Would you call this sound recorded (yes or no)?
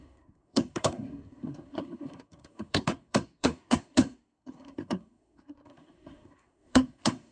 no